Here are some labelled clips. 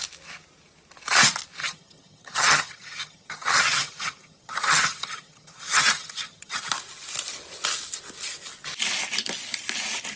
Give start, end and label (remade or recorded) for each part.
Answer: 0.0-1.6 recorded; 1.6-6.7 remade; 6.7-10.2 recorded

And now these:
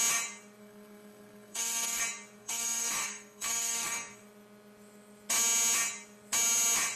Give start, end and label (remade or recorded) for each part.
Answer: 0.0-0.6 recorded; 0.6-2.0 remade; 2.0-2.4 recorded; 2.4-4.2 remade; 4.2-7.0 recorded

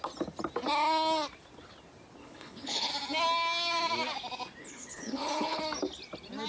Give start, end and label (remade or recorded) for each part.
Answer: 0.0-2.2 recorded; 2.2-2.9 remade; 2.9-4.6 recorded; 4.6-5.6 remade; 5.6-6.5 recorded

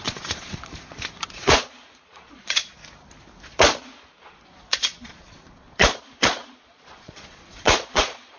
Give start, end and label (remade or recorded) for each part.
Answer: 0.0-2.8 remade; 2.8-4.2 recorded; 4.2-8.4 remade